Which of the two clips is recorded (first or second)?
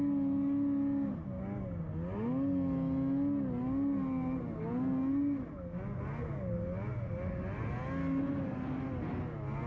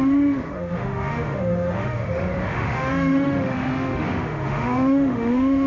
first